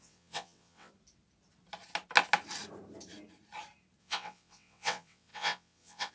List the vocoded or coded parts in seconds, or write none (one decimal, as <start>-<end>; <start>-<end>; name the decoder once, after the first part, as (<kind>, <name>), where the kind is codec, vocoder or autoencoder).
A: 0.0-0.9 (vocoder, WaveNeXt); 4.0-6.1